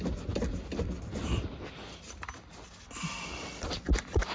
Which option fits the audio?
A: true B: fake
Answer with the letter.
A